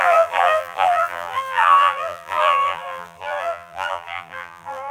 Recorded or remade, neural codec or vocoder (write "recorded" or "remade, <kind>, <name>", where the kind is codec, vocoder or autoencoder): remade, vocoder, BigVGAN v2